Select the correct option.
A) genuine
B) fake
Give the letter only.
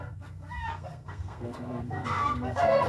B